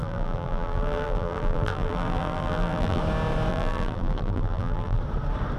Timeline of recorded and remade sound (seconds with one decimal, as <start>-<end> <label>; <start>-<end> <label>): 0.0-3.0 remade; 3.0-3.5 recorded; 3.5-5.0 remade; 5.0-5.6 recorded